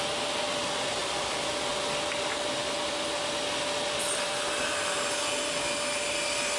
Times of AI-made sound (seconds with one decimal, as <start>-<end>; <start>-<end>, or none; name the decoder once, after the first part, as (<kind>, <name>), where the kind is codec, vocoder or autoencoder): 1.0-1.7 (vocoder, BigVGAN v2)